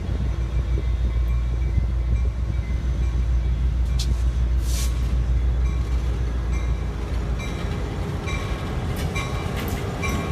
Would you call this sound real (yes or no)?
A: yes